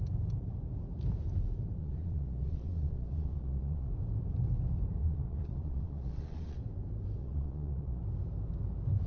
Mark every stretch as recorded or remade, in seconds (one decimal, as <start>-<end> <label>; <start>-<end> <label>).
0.0-1.8 recorded; 1.8-3.9 remade; 3.9-5.0 recorded; 5.0-6.6 remade; 6.6-7.2 recorded; 7.2-8.0 remade; 8.0-9.1 recorded